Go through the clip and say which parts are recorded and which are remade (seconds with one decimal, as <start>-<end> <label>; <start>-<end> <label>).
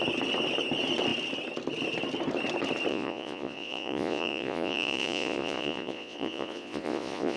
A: 0.0-2.9 recorded; 2.9-7.4 remade